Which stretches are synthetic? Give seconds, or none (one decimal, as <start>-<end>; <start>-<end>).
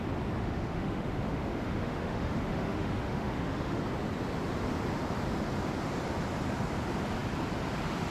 0.4-3.8